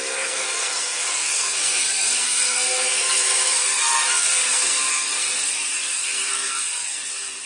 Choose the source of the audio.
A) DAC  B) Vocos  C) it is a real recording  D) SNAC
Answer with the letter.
D